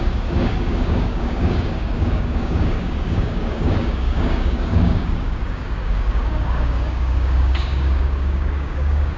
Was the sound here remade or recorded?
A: remade